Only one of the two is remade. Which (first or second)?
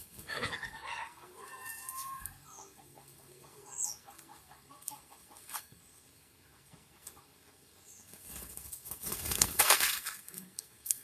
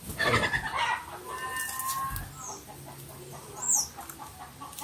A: first